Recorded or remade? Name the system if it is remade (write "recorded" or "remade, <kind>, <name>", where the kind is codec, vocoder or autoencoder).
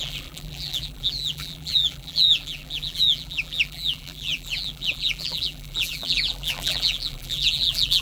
remade, vocoder, BigVGAN v2